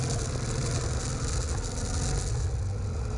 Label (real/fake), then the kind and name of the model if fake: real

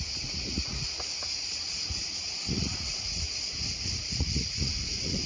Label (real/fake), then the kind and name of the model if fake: fake, vocoder, Vocos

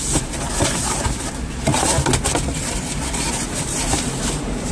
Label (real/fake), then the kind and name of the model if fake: real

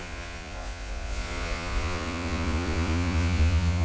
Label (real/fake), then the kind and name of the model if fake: fake, vocoder, Vocos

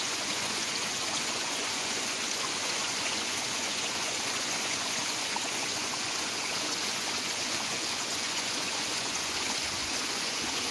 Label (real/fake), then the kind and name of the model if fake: fake, vocoder, Vocos